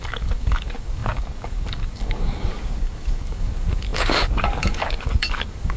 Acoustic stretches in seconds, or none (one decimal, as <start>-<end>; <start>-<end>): none